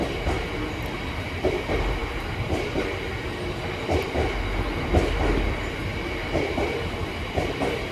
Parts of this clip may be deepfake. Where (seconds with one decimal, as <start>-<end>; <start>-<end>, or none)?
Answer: 2.0-2.8